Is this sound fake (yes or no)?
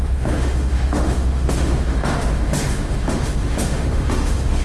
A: yes